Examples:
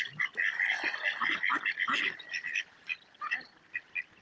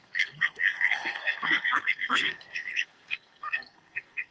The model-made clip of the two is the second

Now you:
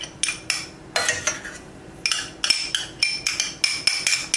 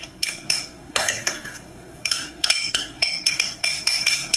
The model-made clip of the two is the second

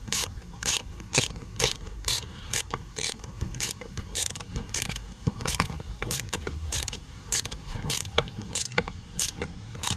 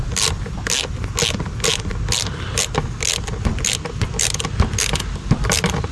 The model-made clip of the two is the first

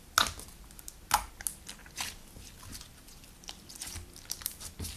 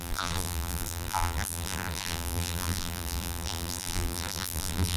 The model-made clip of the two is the second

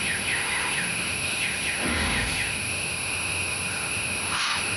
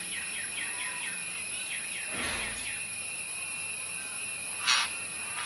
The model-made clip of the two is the first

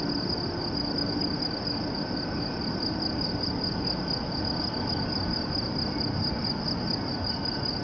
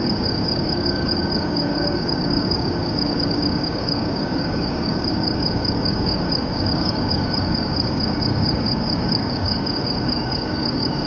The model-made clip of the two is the second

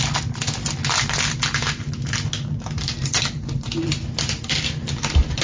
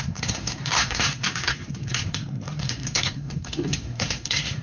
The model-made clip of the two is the second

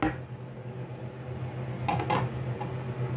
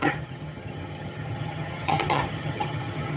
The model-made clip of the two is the second